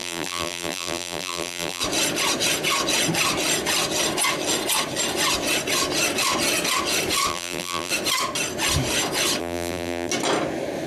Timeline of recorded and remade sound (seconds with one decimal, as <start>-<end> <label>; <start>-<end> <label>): 0.0-1.8 remade; 1.8-7.3 recorded; 7.3-7.9 remade; 7.9-9.4 recorded; 9.4-10.1 remade; 10.1-10.9 recorded